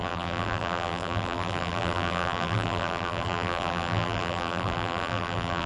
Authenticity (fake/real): fake